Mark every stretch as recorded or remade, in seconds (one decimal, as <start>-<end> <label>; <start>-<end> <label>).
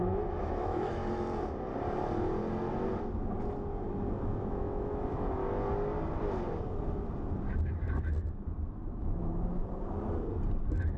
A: 0.0-1.0 remade; 1.0-4.5 recorded; 4.5-5.4 remade; 5.4-8.9 recorded; 8.9-9.6 remade; 9.6-11.0 recorded